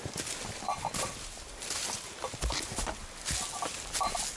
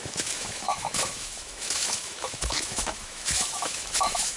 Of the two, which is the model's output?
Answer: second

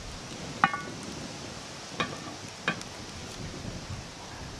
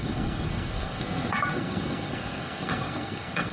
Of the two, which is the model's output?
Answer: second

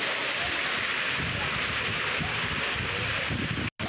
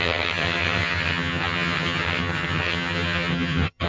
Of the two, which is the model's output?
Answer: second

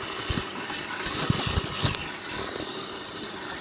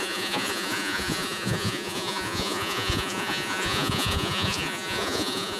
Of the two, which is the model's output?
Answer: second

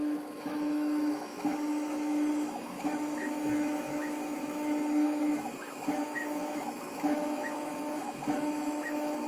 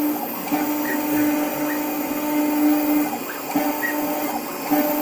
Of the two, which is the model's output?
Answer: first